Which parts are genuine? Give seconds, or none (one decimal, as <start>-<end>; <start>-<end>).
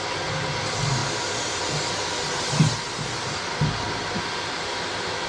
0.0-5.3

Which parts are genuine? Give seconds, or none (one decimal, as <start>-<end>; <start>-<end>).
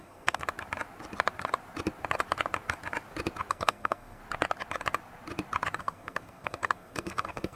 0.4-3.5; 4.2-5.8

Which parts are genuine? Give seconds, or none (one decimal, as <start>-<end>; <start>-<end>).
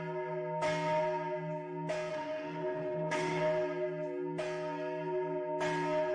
0.0-2.1; 3.4-6.1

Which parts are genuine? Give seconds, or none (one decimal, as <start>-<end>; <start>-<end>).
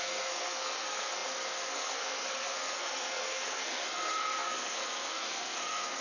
none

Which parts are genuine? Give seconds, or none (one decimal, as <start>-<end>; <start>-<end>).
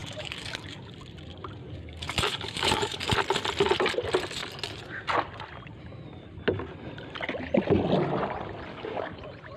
0.9-1.6; 3.1-8.7; 9.2-9.6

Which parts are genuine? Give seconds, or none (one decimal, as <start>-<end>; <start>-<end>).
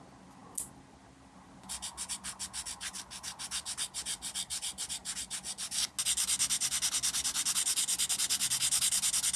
0.0-9.4